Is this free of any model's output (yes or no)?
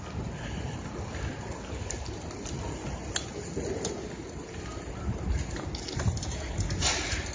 yes